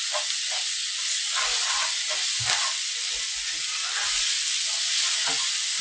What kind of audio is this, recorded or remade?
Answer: recorded